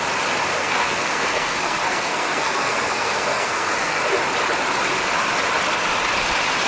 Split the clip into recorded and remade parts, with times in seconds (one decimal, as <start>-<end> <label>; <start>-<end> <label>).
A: 0.0-0.6 recorded; 0.6-4.0 remade; 4.0-6.7 recorded